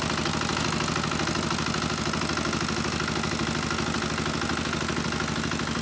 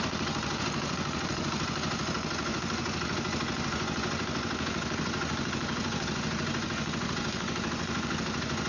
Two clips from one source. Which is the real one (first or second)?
first